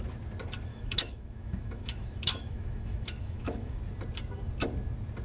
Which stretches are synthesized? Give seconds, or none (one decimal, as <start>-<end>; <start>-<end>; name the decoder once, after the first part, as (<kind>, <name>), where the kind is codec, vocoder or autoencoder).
0.7-3.8 (autoencoder, DAC-VAE)